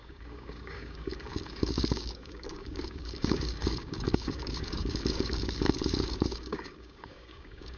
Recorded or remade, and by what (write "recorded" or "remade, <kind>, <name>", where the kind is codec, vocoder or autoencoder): remade, codec, DAC